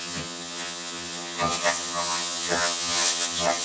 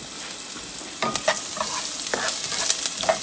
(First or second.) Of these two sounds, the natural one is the second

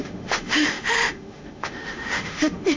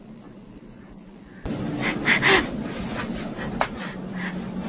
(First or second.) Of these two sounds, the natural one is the second